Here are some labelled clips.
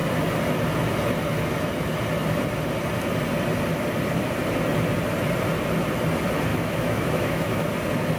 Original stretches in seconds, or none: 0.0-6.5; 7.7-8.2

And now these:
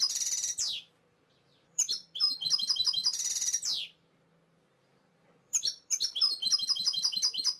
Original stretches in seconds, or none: 3.0-4.8

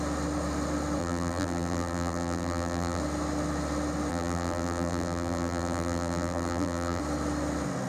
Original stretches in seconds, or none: 0.0-1.0; 3.0-4.1; 7.0-7.9

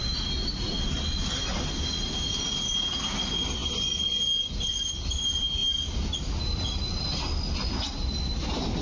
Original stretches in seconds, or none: 0.0-8.8

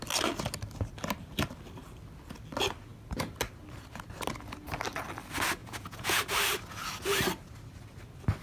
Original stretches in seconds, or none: 0.0-5.6; 6.2-8.4